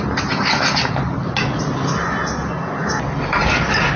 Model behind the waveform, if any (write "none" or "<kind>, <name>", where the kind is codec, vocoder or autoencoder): none